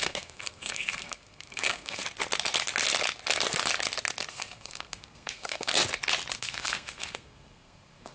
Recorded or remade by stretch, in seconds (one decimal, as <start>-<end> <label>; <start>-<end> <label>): 0.0-2.0 remade; 2.0-4.3 recorded; 4.3-5.7 remade; 5.7-6.4 recorded; 6.4-8.1 remade

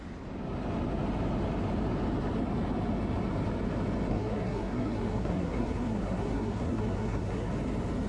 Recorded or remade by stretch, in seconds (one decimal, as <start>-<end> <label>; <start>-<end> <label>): 0.0-4.1 recorded; 4.1-7.5 remade; 7.5-8.1 recorded

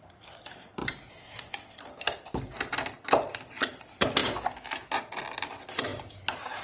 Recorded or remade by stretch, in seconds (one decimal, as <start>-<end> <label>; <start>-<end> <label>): 0.0-6.6 recorded

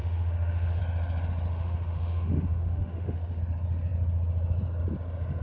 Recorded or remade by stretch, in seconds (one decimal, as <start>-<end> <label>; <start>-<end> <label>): 0.0-0.8 remade; 0.8-1.5 recorded; 1.5-3.4 remade; 3.4-5.4 recorded

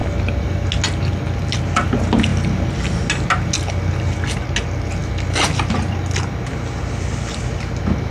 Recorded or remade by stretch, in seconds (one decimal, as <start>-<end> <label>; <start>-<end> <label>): 0.0-8.1 recorded